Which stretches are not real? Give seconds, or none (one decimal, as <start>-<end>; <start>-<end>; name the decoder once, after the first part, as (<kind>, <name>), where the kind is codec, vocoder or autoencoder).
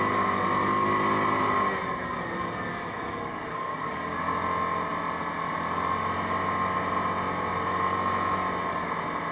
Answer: 2.0-4.2 (codec, DAC)